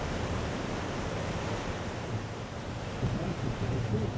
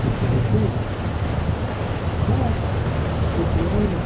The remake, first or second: first